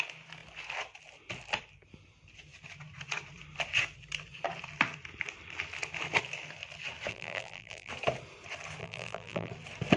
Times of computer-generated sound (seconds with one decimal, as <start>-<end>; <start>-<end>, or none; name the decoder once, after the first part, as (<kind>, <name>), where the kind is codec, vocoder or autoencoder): 7.1-7.9 (vocoder, BigVGAN v2); 8.8-9.5